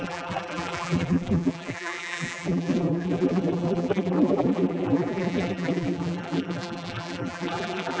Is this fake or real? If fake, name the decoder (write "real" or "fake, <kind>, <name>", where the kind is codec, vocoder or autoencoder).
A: fake, vocoder, BigVGAN v2